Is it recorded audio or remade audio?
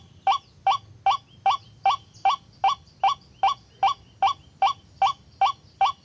recorded